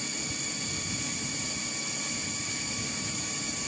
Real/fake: real